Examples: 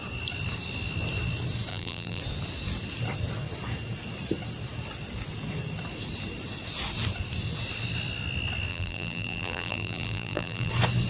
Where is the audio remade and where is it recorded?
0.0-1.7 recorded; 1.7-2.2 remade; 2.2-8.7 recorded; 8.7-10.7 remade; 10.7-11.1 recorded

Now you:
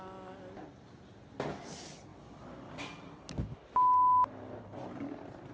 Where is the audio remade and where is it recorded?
0.0-5.5 recorded

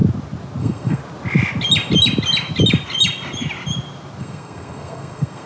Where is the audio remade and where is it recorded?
0.0-0.6 recorded; 0.6-1.0 remade; 1.0-4.2 recorded; 4.2-5.5 remade

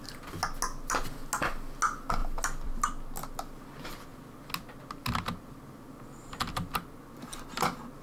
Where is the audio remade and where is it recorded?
0.0-8.0 recorded

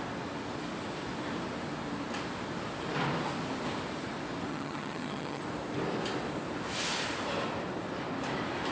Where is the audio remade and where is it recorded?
0.0-4.5 recorded; 4.5-5.4 remade; 5.4-8.7 recorded